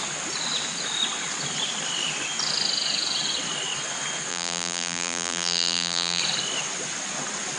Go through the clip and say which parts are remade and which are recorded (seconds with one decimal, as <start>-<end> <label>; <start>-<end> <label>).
0.0-4.3 recorded; 4.3-6.2 remade; 6.2-7.6 recorded